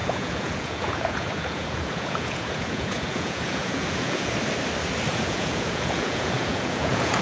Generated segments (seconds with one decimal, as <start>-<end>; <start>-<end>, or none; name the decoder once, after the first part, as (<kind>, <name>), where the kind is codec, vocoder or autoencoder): 0.0-4.3 (vocoder, Vocos); 5.1-7.2